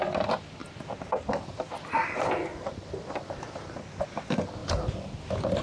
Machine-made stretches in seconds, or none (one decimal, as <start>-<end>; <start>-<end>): none